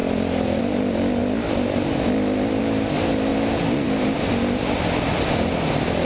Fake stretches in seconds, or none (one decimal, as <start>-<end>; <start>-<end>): none